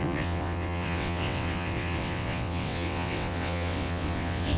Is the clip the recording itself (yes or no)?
no